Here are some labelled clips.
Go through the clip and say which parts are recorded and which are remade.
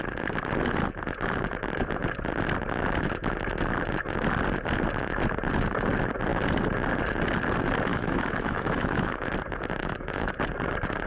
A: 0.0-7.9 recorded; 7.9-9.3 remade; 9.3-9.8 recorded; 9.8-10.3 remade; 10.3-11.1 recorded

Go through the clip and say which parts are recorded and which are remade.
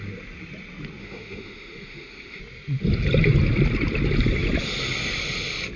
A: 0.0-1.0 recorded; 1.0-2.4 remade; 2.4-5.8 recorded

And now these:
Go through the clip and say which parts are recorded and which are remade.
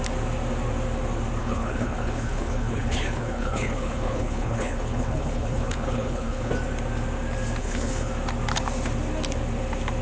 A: 0.0-1.4 recorded; 1.4-6.5 remade; 6.5-7.6 recorded; 7.6-8.1 remade; 8.1-10.0 recorded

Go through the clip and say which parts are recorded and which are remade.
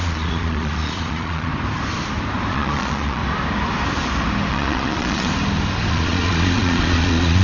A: 0.0-1.5 remade; 1.5-2.5 recorded; 2.5-3.2 remade; 3.2-4.5 recorded; 4.5-5.3 remade; 5.3-5.9 recorded; 5.9-7.4 remade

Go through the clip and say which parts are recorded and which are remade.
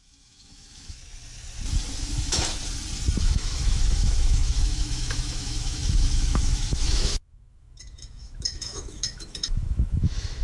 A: 0.0-1.0 remade; 1.0-2.0 recorded; 2.0-2.6 remade; 2.6-3.2 recorded; 3.2-10.4 remade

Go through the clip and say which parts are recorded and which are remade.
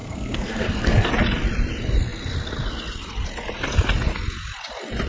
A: 0.0-1.1 remade; 1.1-5.1 recorded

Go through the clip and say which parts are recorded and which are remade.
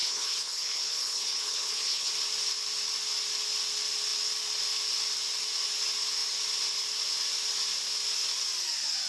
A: 0.0-2.1 remade; 2.1-9.1 recorded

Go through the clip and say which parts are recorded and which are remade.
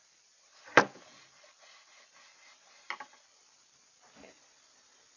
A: 0.0-2.8 remade; 2.8-5.2 recorded